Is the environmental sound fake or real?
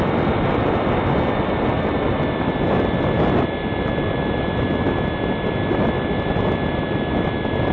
real